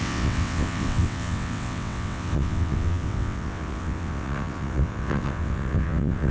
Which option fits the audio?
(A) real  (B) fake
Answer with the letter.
B